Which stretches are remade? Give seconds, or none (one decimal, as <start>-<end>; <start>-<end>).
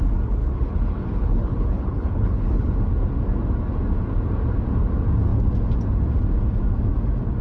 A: 0.4-2.7